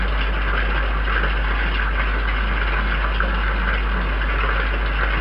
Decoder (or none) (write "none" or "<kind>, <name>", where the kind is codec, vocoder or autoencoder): none